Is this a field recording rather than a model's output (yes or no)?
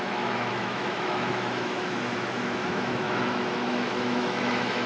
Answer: no